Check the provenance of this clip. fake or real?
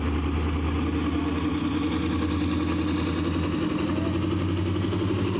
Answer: real